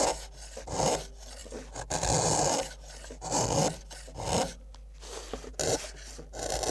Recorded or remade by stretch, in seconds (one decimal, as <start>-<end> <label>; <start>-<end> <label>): 0.0-6.7 recorded